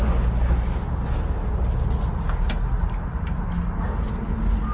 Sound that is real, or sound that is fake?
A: real